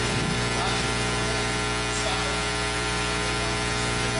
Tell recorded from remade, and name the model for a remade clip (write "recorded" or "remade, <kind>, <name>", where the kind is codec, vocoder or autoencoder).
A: recorded